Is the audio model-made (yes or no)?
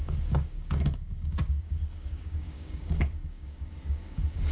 yes